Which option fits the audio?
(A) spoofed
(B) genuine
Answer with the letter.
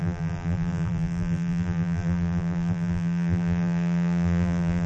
A